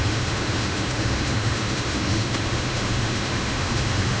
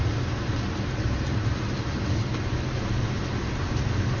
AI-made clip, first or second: first